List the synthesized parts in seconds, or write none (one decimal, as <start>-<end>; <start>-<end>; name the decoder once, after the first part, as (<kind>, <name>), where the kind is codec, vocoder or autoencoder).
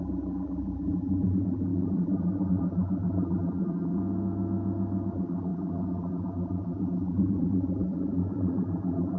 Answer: 0.0-4.0 (vocoder, BigVGAN v2); 5.1-9.2